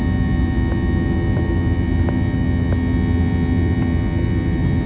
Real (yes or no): yes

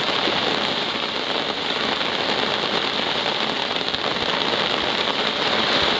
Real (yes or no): yes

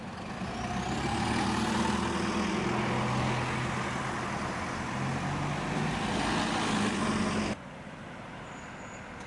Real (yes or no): yes